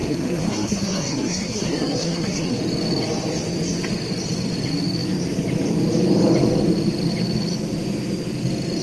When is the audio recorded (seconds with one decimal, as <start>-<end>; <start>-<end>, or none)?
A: 2.6-8.8